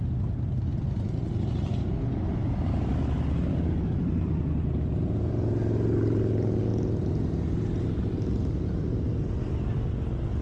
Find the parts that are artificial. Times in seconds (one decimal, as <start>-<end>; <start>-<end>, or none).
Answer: none